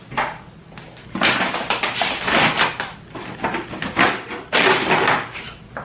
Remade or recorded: recorded